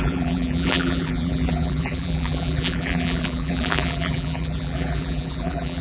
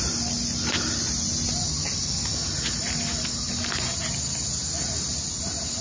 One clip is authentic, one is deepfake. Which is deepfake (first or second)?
first